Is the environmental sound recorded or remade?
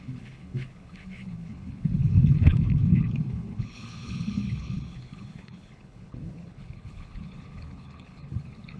remade